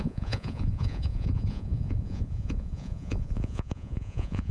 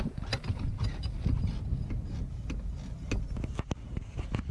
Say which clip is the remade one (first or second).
first